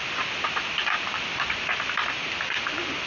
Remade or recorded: recorded